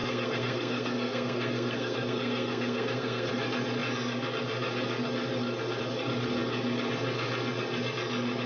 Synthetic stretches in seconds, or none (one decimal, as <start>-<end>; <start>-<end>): 0.0-3.3